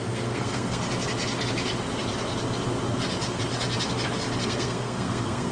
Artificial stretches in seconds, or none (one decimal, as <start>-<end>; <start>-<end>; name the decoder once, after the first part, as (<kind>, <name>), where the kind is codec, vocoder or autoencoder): 0.0-0.8 (codec, SNAC); 4.4-5.5